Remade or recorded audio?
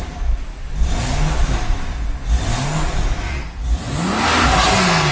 recorded